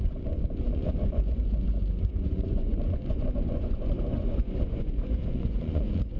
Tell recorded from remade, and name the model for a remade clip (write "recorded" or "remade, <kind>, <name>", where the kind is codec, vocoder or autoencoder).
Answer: remade, vocoder, Vocos